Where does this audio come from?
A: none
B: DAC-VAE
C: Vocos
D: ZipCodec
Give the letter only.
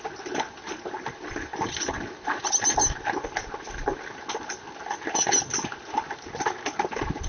A